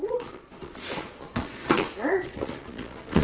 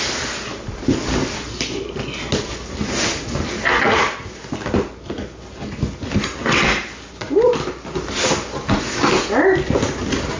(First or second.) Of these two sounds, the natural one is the second